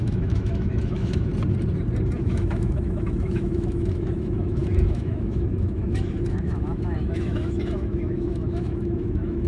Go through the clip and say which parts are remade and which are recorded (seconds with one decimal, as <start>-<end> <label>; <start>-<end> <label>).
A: 0.0-1.3 remade; 1.3-2.2 recorded; 2.2-9.5 remade